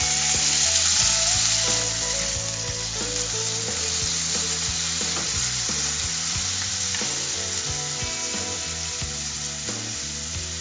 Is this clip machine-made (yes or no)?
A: no